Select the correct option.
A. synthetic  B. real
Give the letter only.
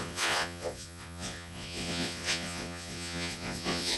A